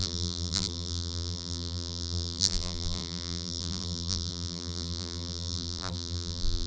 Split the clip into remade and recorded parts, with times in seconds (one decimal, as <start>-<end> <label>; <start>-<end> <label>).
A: 0.0-6.7 remade